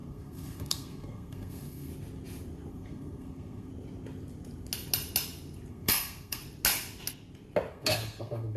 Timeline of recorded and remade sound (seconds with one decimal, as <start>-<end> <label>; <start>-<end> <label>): 0.0-1.9 remade; 1.9-2.7 recorded; 2.7-3.7 remade; 3.7-5.7 recorded; 5.7-6.4 remade; 6.4-7.7 recorded; 7.7-8.6 remade